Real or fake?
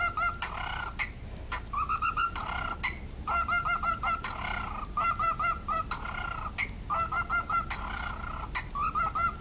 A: real